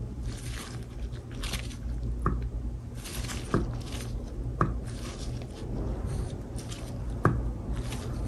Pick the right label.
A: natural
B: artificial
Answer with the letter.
A